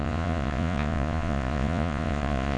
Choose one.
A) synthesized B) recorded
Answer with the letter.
A